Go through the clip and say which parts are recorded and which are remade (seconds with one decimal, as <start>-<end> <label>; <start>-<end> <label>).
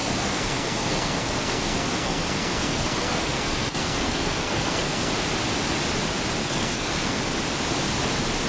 0.0-5.1 remade; 5.1-6.4 recorded; 6.4-7.2 remade; 7.2-8.5 recorded